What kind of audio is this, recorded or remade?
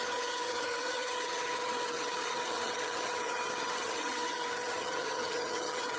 remade